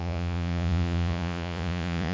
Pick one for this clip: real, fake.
fake